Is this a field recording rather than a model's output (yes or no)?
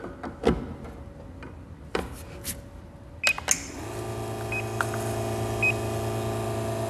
yes